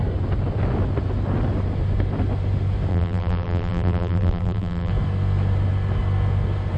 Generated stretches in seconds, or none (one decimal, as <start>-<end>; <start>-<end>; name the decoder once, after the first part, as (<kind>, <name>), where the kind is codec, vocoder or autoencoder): 2.9-4.9 (vocoder, BigVGAN v2)